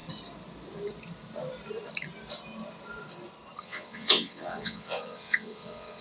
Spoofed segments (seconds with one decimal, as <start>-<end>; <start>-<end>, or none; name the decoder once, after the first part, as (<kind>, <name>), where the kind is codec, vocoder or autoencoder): 3.6-6.0 (vocoder, WaveNeXt)